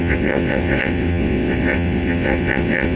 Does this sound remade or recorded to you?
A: remade